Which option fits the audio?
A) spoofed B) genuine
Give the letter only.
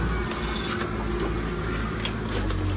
B